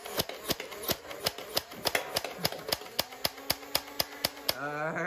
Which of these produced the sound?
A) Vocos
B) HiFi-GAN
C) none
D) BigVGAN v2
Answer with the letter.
C